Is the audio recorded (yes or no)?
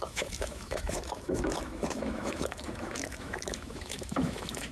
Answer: no